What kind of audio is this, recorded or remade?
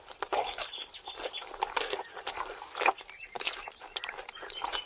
remade